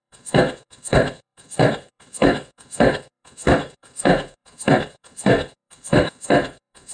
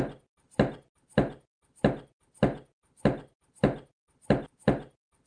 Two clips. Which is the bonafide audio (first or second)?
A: second